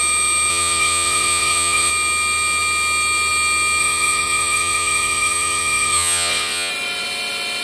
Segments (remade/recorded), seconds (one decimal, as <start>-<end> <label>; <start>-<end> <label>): 0.0-0.5 recorded; 0.5-1.9 remade; 1.9-3.8 recorded; 3.8-6.7 remade; 6.7-7.6 recorded